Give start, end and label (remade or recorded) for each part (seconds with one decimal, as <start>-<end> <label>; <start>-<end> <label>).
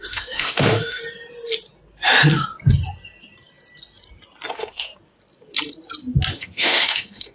0.0-1.0 remade; 1.0-4.5 recorded; 4.5-4.9 remade; 4.9-6.3 recorded; 6.3-7.3 remade